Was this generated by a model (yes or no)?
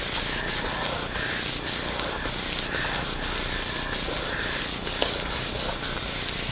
no